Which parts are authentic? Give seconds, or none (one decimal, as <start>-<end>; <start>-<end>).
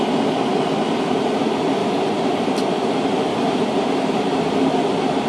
0.0-1.8; 2.6-3.3; 4.6-5.3